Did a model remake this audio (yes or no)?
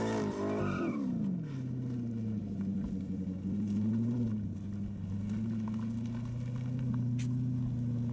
no